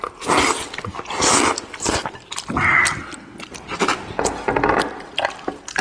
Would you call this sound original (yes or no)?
yes